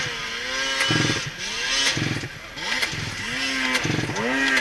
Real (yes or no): yes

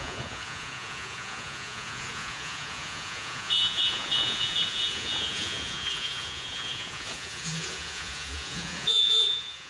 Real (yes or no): no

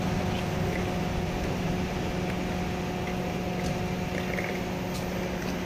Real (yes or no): yes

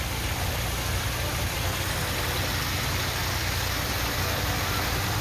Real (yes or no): yes